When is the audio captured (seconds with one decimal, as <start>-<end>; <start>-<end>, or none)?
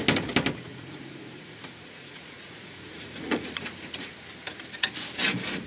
0.0-0.7; 4.1-5.7